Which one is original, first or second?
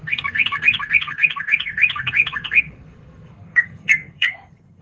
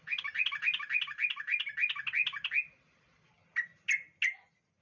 second